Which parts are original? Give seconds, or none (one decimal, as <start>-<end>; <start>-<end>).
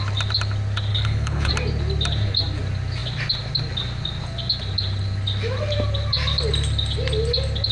0.0-0.9; 1.5-7.7